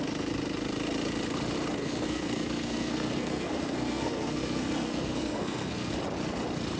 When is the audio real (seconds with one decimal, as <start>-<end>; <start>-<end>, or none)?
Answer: 0.0-1.8; 5.9-6.8